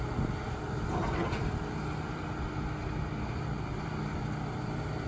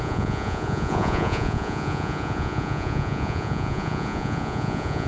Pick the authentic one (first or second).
first